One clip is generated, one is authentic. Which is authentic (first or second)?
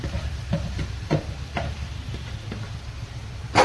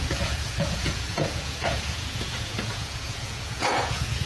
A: first